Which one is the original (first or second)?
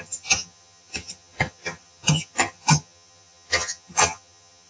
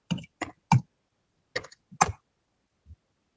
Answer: second